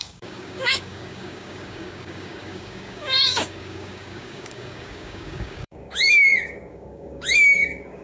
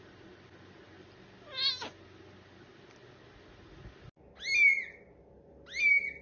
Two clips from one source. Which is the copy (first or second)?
first